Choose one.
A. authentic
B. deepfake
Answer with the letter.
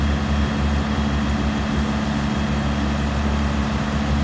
A